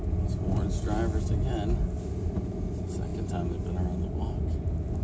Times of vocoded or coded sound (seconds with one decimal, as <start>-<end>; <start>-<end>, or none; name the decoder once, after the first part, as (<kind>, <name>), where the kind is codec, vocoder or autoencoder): none